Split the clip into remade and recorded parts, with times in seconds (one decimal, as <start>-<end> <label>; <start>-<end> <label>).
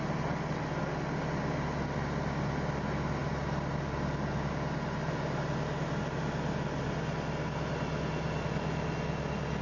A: 0.0-9.6 recorded